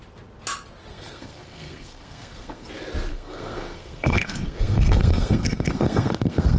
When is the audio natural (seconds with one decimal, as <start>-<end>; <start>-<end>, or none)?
0.0-0.9; 2.7-3.1